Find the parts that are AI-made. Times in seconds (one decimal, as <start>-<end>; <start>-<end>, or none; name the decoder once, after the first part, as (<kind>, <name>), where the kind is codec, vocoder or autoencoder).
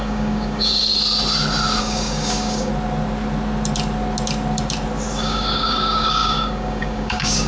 0.0-0.9 (codec, DAC); 1.8-2.7; 5.2-7.5